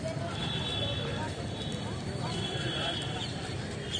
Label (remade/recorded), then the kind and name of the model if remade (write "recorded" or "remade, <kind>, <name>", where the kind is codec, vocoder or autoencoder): recorded